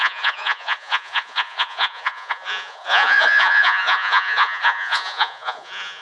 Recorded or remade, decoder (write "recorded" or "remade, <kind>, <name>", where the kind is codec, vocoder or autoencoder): remade, vocoder, Vocos